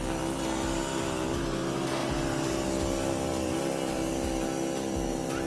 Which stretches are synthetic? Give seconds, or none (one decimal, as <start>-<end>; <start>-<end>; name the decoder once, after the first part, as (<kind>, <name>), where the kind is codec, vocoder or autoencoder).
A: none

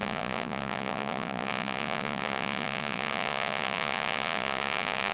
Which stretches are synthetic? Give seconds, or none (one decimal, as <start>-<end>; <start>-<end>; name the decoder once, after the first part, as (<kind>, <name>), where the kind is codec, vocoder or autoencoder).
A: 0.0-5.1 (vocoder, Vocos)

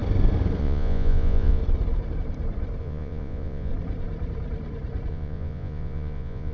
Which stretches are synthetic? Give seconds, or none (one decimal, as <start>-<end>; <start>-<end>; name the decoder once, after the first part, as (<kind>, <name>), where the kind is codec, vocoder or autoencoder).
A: 0.6-1.6 (vocoder, Vocos); 2.8-3.7; 5.1-6.5